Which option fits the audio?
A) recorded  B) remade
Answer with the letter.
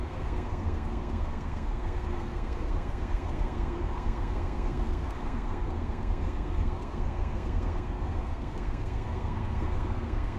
B